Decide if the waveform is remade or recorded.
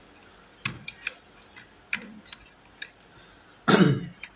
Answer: recorded